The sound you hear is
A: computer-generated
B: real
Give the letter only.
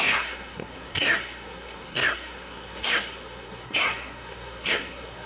A